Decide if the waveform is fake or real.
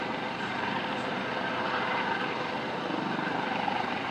fake